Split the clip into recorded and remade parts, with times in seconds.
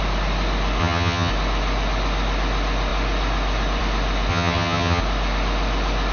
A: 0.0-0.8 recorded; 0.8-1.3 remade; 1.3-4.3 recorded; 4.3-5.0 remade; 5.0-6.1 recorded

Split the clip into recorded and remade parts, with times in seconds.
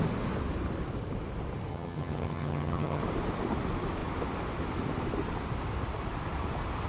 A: 0.0-1.7 recorded; 1.7-3.0 remade; 3.0-6.9 recorded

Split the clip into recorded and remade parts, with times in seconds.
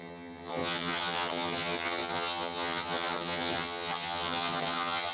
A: 0.0-5.1 remade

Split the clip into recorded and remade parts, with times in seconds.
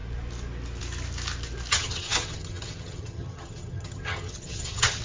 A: 0.0-1.7 recorded; 1.7-5.0 remade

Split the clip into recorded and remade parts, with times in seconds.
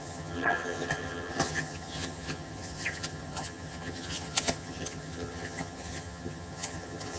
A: 0.0-7.2 remade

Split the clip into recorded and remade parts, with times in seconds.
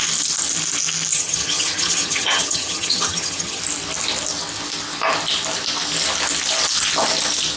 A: 0.0-1.1 recorded; 1.1-3.6 remade; 3.6-7.6 recorded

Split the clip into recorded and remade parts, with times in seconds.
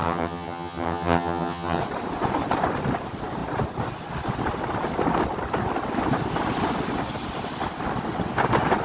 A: 0.0-1.8 remade; 1.8-8.8 recorded